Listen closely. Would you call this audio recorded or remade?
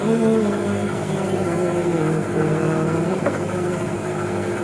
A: remade